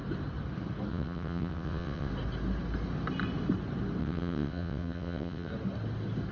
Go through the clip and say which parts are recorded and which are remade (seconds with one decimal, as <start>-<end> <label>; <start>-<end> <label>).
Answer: 0.0-0.9 recorded; 0.9-2.1 remade; 2.1-4.0 recorded; 4.0-5.5 remade; 5.5-6.3 recorded